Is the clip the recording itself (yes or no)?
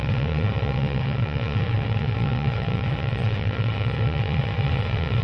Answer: no